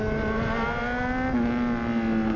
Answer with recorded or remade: recorded